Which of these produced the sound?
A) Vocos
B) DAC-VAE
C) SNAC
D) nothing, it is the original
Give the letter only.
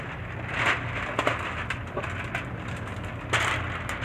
D